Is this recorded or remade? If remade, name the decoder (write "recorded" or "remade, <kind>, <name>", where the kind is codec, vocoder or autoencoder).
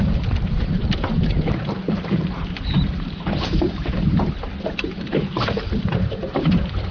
remade, vocoder, BigVGAN v2